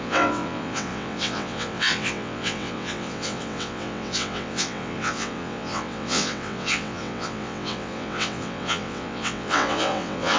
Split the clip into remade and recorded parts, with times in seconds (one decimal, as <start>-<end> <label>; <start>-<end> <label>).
0.0-10.4 remade